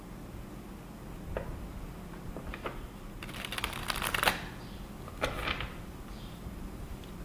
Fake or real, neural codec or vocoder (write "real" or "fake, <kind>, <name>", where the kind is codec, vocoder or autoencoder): real